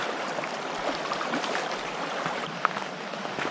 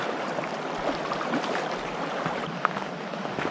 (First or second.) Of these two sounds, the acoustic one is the second